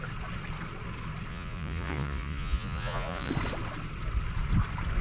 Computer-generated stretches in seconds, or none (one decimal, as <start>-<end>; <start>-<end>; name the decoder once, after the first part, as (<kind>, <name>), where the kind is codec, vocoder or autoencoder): 1.3-3.3 (vocoder, Vocos)